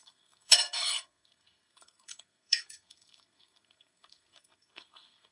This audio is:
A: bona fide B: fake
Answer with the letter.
B